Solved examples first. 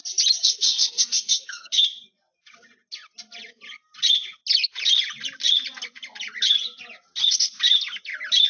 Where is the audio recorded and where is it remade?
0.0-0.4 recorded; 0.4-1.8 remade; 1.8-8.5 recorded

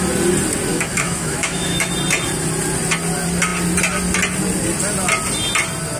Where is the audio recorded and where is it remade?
0.0-0.7 recorded; 0.7-1.9 remade; 1.9-6.0 recorded

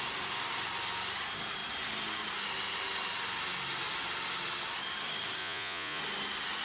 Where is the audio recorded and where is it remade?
0.0-5.4 recorded; 5.4-6.0 remade; 6.0-6.6 recorded

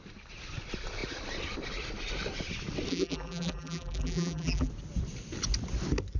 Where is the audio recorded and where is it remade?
0.0-2.9 recorded; 2.9-4.7 remade; 4.7-6.2 recorded

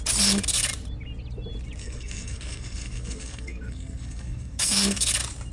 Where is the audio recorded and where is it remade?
0.0-1.8 recorded; 1.8-5.1 remade; 5.1-5.5 recorded

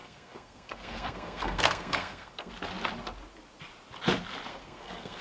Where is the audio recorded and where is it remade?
0.0-2.5 remade; 2.5-4.5 recorded; 4.5-5.2 remade

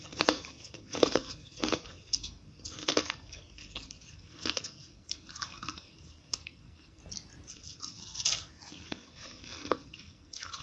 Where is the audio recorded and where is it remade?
0.0-7.0 remade; 7.0-7.5 recorded; 7.5-10.6 remade